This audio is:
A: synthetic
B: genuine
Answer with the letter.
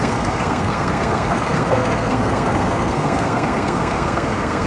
A